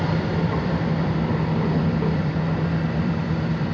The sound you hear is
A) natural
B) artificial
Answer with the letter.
B